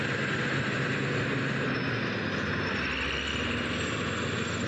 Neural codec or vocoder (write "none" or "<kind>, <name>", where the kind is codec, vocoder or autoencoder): none